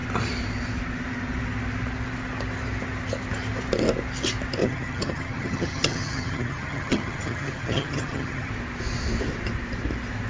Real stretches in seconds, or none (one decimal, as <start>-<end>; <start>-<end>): 0.0-4.6; 8.5-10.3